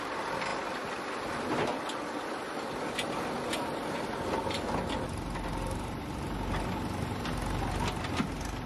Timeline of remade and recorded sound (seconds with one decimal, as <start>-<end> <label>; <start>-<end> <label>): 0.0-8.7 recorded